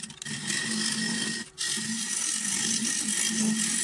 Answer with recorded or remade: recorded